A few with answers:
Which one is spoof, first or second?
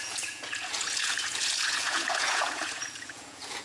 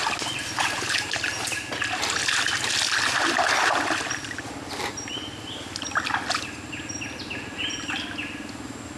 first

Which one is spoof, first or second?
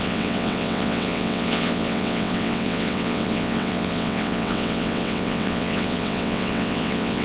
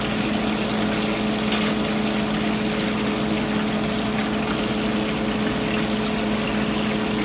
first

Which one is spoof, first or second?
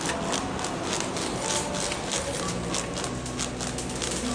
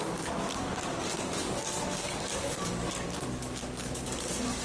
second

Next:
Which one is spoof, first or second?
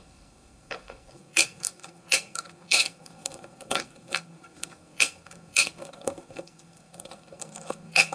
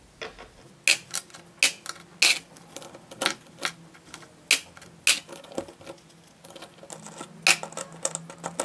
first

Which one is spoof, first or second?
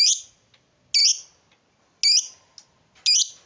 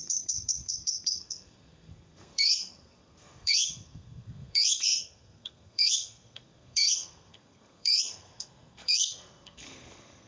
second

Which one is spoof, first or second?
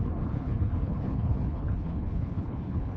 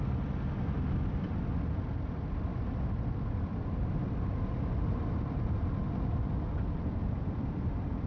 first